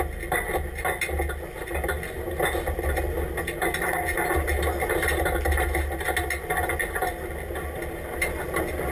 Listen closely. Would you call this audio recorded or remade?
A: recorded